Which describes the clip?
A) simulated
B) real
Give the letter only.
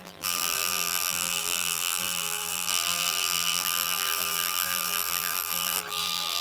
A